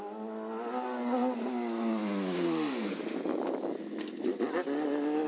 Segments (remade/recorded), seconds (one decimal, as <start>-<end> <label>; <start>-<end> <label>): 0.0-3.3 recorded; 3.3-4.0 remade; 4.0-5.3 recorded